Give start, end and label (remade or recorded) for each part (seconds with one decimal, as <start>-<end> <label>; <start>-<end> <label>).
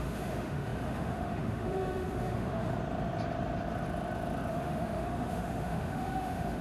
0.0-2.7 remade; 2.7-4.5 recorded; 4.5-6.6 remade